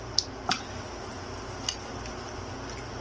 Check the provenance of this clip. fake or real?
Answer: real